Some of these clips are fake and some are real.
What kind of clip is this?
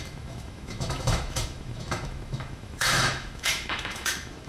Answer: fake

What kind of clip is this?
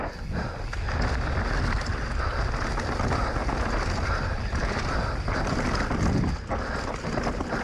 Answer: real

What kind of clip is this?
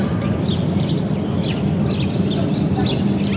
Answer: real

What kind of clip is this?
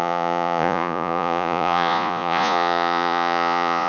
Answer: fake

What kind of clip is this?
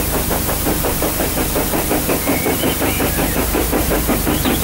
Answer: fake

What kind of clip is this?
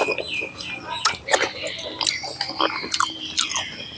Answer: real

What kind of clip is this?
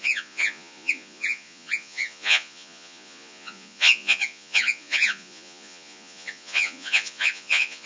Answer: fake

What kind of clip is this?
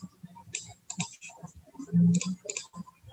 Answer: real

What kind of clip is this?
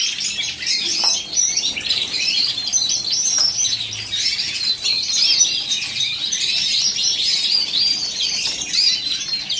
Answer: fake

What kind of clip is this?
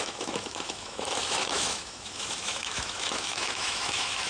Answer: fake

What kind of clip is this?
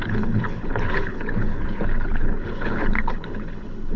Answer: fake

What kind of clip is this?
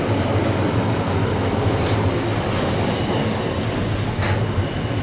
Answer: real